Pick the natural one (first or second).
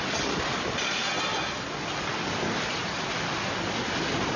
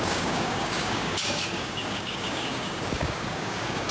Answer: first